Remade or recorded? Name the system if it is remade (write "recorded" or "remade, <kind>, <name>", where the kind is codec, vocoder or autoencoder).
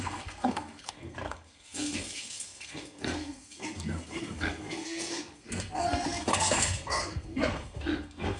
remade, codec, SNAC